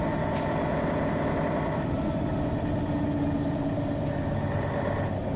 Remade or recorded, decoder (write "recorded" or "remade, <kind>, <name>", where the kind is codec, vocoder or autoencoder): recorded